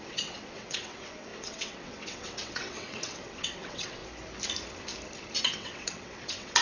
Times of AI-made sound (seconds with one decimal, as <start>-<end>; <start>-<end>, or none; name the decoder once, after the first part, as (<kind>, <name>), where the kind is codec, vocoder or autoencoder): 0.0-4.0 (vocoder, WaveNeXt); 5.4-6.6